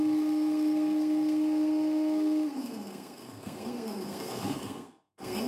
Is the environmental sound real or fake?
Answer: fake